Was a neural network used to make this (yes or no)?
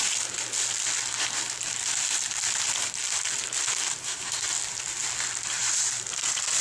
no